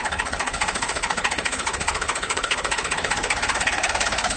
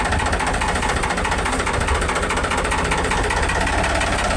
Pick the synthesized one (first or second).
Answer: first